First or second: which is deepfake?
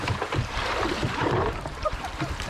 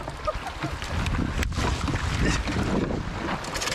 first